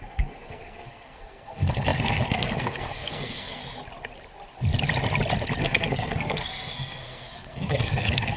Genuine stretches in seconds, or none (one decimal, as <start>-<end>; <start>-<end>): 3.6-5.6